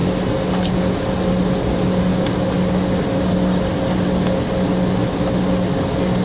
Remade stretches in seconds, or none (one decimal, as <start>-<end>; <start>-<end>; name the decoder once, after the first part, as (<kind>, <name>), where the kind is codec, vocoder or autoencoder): none